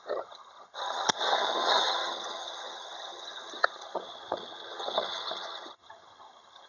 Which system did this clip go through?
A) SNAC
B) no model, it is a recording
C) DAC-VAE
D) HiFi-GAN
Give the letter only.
D